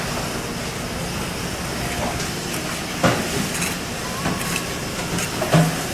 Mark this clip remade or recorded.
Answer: recorded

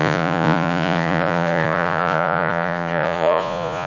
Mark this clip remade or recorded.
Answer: remade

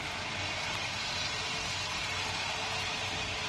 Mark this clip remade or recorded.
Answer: recorded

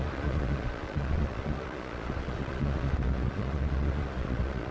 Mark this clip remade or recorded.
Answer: remade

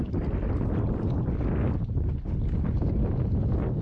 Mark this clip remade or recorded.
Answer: recorded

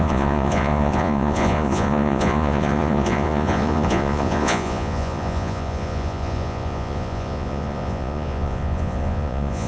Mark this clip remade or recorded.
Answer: remade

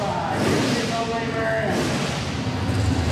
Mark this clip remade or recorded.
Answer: recorded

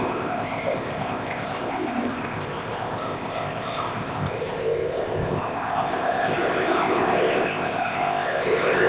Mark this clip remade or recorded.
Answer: remade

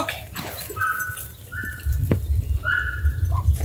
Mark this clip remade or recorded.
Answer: recorded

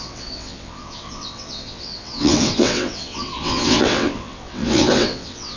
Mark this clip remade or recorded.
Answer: remade